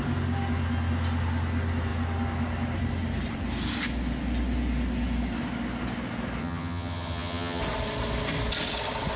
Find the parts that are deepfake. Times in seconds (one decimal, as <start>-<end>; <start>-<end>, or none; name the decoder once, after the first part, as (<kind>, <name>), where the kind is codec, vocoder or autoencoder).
6.4-7.6 (vocoder, HiFi-GAN)